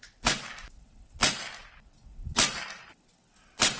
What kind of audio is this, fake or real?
real